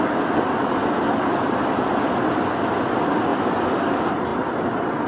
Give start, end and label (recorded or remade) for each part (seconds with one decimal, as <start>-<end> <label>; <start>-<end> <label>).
0.0-5.1 recorded